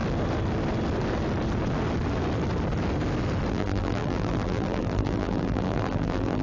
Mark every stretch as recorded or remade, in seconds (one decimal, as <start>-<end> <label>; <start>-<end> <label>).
0.0-3.5 recorded; 3.5-6.4 remade